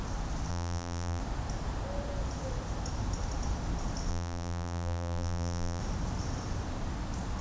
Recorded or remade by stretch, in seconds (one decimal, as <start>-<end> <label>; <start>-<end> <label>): 0.0-0.5 recorded; 0.5-1.2 remade; 1.2-4.1 recorded; 4.1-5.8 remade; 5.8-7.4 recorded